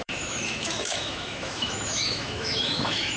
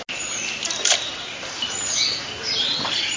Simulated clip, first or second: first